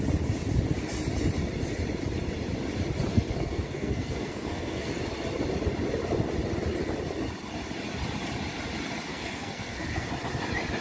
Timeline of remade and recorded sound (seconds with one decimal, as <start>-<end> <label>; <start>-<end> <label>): 0.0-3.1 recorded; 3.1-4.9 remade; 4.9-9.1 recorded; 9.1-10.1 remade; 10.1-10.8 recorded